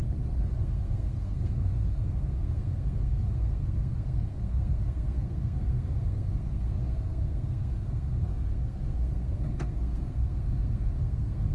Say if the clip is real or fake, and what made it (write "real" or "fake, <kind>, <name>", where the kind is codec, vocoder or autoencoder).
fake, codec, SNAC